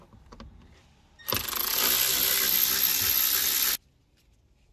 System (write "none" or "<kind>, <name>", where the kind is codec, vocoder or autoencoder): none